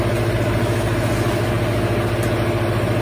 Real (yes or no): yes